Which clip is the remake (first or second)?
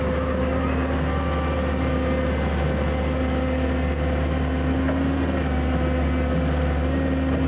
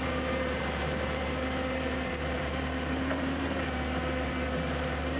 second